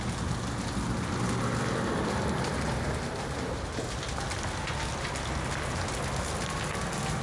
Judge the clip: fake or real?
real